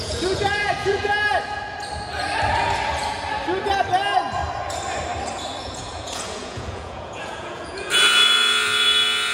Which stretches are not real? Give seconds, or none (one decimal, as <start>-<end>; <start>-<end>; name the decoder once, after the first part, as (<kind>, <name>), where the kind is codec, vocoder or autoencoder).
0.0-1.1 (vocoder, Vocos); 5.6-9.3